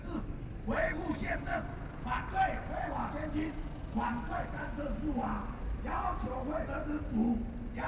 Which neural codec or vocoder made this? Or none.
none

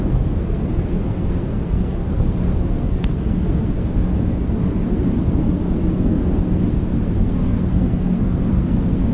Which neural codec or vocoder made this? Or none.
codec, SNAC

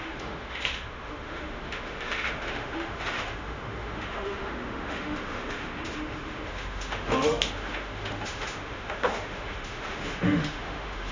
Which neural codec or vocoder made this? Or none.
autoencoder, DAC-VAE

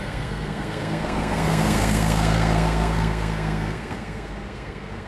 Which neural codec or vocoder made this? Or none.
codec, SNAC